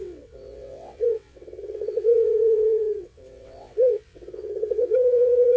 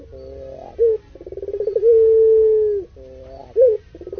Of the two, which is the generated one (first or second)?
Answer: first